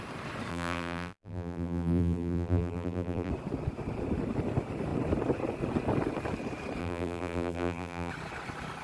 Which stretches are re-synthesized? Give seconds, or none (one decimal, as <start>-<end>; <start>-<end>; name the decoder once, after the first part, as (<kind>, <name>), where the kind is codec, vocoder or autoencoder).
0.5-3.3 (vocoder, BigVGAN v2); 6.8-8.1